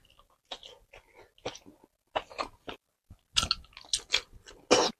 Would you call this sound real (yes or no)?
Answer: yes